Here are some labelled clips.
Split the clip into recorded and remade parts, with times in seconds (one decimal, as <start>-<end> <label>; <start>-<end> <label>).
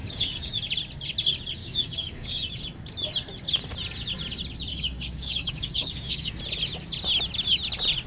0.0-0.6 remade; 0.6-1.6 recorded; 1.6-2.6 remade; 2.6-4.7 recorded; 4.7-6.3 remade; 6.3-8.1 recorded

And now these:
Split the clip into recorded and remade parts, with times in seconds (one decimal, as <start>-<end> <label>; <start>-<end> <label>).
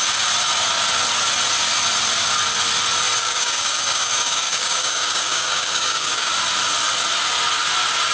0.0-3.2 recorded; 3.2-6.3 remade; 6.3-8.1 recorded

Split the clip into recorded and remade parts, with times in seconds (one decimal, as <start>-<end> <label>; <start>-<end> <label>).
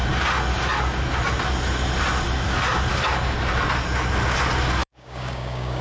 0.0-4.8 recorded; 4.8-5.8 remade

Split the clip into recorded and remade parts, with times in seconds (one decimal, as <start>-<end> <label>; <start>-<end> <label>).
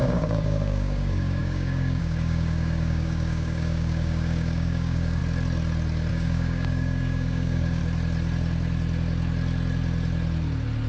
0.0-5.2 remade; 5.2-6.1 recorded; 6.1-7.8 remade; 7.8-10.9 recorded